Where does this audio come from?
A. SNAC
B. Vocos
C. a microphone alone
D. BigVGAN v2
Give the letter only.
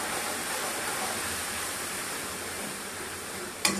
D